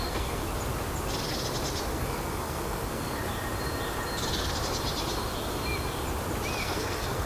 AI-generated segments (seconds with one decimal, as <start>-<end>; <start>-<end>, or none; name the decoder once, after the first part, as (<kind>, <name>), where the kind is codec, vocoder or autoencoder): 0.0-0.4 (codec, SNAC); 1.9-3.2; 6.6-7.3